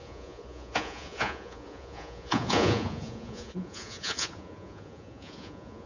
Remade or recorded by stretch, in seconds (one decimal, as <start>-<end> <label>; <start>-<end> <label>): 0.0-5.9 remade